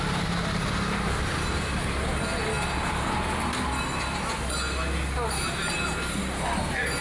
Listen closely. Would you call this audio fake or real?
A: real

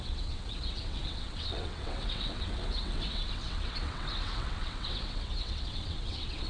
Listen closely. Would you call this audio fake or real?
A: fake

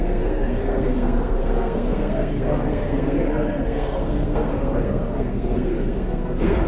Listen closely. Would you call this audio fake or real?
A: fake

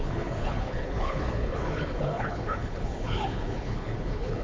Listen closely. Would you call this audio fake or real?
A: fake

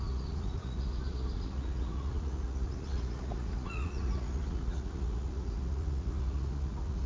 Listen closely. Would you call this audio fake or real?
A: fake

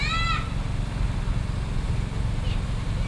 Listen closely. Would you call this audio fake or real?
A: real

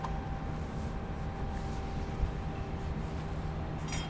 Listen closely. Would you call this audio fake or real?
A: real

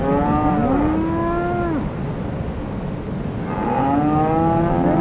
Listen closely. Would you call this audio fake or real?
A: real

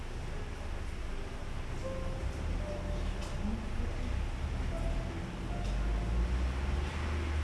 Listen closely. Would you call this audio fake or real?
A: real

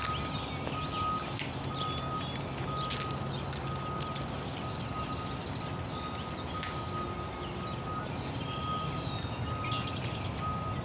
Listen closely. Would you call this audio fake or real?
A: real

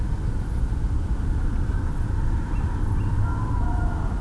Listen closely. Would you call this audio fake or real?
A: real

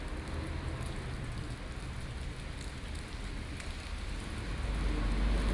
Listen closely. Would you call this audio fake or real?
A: real